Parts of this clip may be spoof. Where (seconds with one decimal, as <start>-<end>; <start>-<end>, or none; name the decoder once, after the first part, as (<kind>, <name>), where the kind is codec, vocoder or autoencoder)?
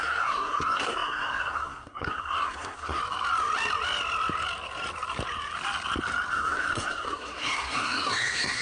0.0-3.0 (codec, SNAC); 6.3-8.6